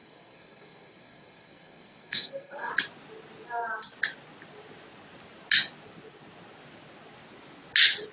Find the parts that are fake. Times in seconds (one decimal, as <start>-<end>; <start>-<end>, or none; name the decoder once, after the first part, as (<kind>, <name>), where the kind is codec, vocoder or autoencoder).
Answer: 0.0-2.7 (codec, SNAC)